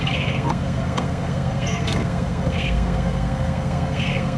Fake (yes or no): yes